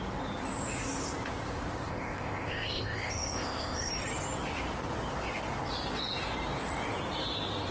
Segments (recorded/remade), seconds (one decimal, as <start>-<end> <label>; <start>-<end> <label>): 0.0-1.9 recorded; 1.9-3.9 remade; 3.9-7.7 recorded